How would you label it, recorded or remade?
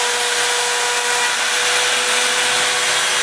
recorded